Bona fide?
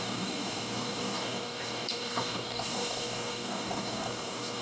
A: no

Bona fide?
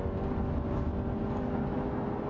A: yes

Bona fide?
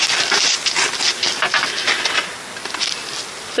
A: yes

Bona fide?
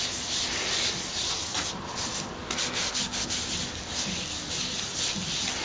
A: yes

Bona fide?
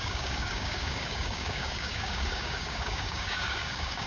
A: no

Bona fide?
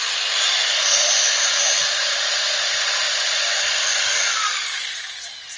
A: yes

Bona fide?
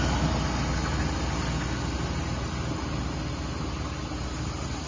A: yes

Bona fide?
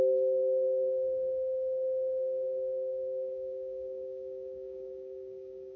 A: no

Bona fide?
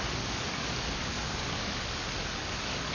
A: no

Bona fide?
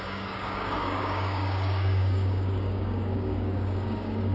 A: no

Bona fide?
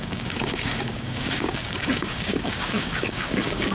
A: no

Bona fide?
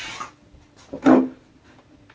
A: yes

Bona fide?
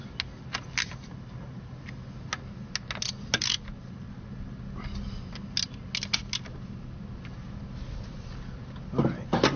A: yes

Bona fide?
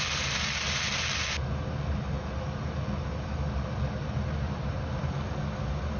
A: yes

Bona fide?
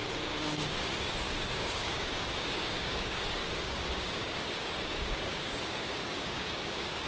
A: no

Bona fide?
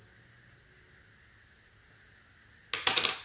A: yes